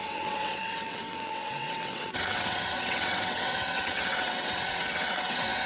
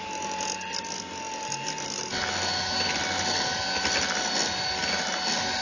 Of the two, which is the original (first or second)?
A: second